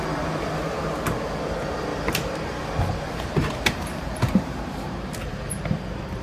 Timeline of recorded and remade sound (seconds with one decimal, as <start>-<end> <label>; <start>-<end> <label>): 0.0-1.9 recorded; 1.9-5.6 remade; 5.6-6.2 recorded